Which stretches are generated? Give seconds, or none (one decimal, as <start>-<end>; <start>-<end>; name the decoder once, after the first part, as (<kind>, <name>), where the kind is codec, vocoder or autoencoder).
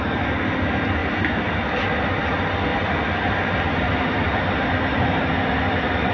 2.7-4.6 (vocoder, BigVGAN v2)